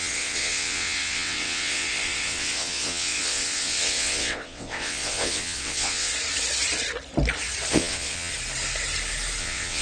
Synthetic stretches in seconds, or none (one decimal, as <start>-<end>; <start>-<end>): 0.0-6.1; 7.7-8.3; 9.4-9.8